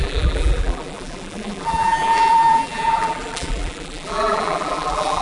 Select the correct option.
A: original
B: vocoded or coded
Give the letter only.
B